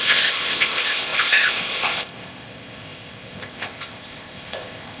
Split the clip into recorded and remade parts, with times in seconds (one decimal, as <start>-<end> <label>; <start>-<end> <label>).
0.0-5.0 remade